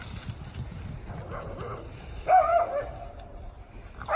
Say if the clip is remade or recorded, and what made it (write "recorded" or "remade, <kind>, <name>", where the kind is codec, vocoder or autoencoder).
recorded